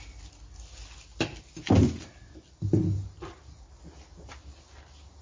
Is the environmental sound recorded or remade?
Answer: recorded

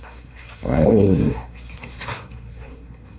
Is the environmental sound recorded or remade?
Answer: remade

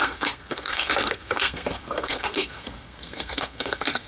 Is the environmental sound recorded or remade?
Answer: remade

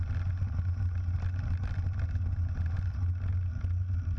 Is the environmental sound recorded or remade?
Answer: recorded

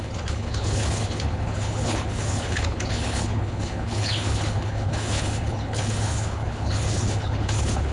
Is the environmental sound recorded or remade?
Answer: remade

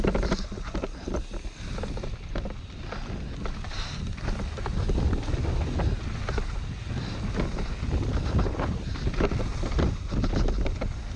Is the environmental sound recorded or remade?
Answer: recorded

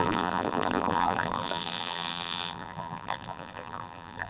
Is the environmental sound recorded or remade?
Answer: remade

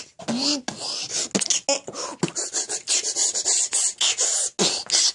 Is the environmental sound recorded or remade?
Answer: recorded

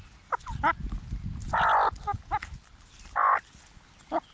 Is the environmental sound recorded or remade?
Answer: recorded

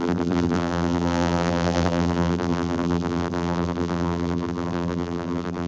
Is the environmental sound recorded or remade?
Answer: remade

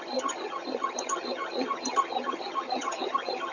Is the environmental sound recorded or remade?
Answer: remade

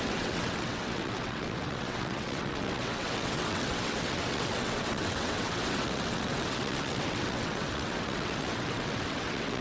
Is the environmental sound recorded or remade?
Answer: remade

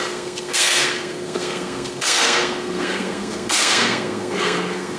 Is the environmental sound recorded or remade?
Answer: remade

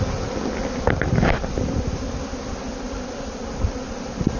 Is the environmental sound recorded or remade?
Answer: recorded